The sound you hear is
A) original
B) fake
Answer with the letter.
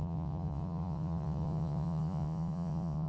B